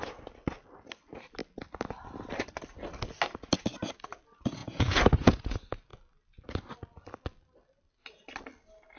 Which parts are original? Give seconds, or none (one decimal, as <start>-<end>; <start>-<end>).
0.0-4.6; 5.4-9.0